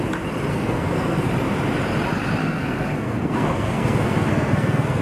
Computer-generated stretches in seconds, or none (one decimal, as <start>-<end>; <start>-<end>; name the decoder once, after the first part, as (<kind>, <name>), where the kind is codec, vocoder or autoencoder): 0.5-1.3 (codec, SNAC); 2.4-5.0